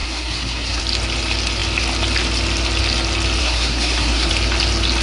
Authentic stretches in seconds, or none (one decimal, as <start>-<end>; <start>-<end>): 0.8-3.4; 4.3-5.0